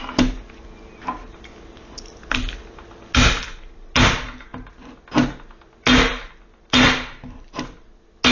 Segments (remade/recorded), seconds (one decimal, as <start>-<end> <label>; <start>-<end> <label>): 0.0-8.3 recorded